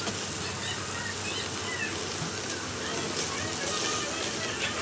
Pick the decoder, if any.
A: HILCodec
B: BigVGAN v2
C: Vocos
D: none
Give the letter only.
D